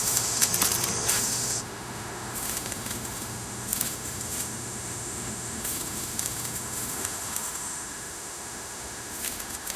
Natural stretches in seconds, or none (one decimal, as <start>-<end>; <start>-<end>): 0.5-1.1